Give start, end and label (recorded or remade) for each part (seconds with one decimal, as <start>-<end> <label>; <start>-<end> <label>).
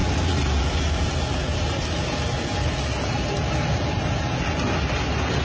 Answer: 0.0-5.4 recorded